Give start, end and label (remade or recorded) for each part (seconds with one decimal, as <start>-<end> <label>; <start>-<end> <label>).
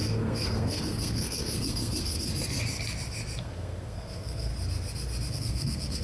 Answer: 0.0-2.3 remade; 2.3-3.4 recorded; 3.4-4.5 remade; 4.5-5.3 recorded; 5.3-6.0 remade